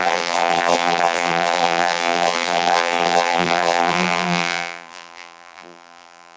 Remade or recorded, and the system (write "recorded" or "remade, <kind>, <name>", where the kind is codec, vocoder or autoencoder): remade, vocoder, BigVGAN v2